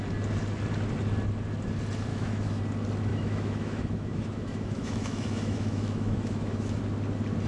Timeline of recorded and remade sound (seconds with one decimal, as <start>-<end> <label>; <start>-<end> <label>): 0.0-2.1 recorded; 2.1-2.6 remade; 2.6-3.1 recorded; 3.1-6.8 remade; 6.8-7.5 recorded